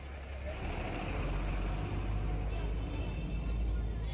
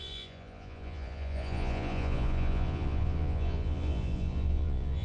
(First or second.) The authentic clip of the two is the first